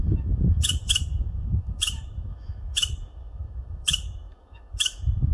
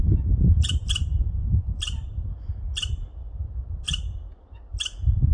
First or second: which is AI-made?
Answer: first